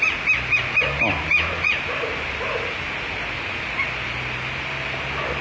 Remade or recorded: recorded